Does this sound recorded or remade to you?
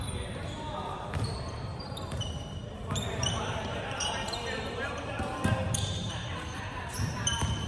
remade